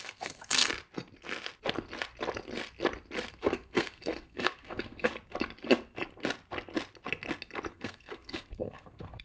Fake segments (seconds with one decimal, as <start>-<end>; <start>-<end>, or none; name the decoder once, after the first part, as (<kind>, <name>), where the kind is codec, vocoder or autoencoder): 0.0-0.7 (codec, SNAC); 3.3-5.1; 7.7-9.2